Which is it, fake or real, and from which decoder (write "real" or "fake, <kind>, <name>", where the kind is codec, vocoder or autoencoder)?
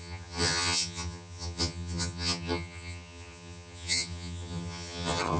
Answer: fake, vocoder, HiFi-GAN